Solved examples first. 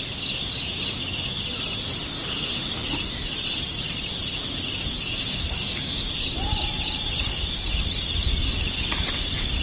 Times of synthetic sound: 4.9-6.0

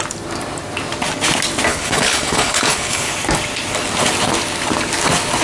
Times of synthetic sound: 1.7-3.1

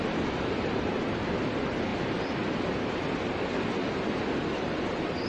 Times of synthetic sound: none

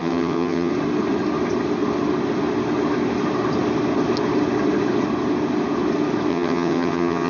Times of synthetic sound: 0.0-0.7; 6.3-7.3